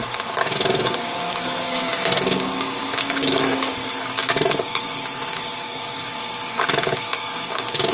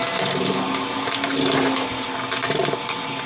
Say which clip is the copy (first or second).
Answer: first